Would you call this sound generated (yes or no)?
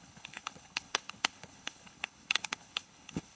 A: yes